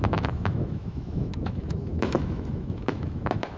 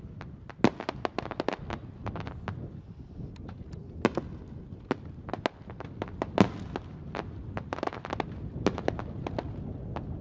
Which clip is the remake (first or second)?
first